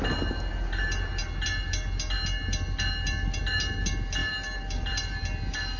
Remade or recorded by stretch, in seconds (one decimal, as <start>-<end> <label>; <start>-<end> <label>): 0.0-5.8 recorded